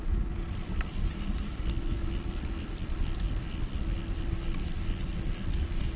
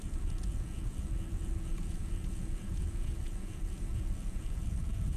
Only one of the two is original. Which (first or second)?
first